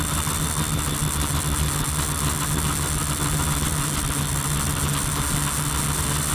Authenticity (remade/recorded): recorded